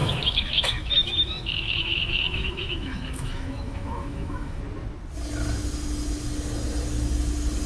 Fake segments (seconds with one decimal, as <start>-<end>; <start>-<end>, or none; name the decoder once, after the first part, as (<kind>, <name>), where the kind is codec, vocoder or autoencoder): 0.0-4.6 (autoencoder, DAC-VAE)